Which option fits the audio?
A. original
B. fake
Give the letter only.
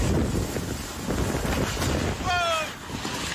A